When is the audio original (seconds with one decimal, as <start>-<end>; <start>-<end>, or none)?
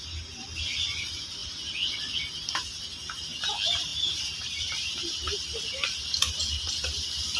0.0-3.9; 4.9-7.4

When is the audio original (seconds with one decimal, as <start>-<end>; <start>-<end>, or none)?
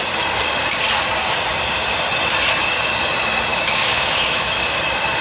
0.0-3.5; 4.8-5.2